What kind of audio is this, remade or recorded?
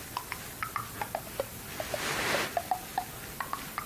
recorded